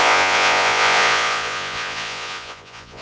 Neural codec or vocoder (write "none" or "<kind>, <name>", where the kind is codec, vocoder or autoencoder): vocoder, Vocos